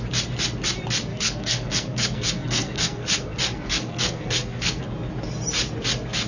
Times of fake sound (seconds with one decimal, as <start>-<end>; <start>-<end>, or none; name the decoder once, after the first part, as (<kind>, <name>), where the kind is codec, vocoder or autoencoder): 1.1-4.8 (codec, SNAC)